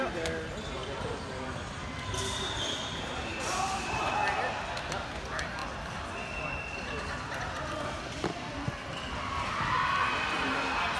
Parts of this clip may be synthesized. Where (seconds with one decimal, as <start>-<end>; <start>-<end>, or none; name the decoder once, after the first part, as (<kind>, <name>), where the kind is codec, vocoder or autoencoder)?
3.3-4.0 (vocoder, BigVGAN v2)